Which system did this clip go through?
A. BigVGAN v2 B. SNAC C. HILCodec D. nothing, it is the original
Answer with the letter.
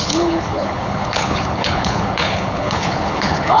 C